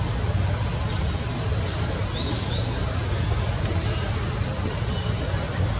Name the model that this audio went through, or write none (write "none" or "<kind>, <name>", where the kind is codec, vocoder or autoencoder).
none